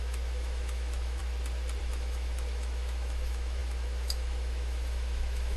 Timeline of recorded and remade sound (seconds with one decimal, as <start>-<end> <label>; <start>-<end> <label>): 0.0-1.2 remade; 1.2-1.8 recorded; 1.8-5.6 remade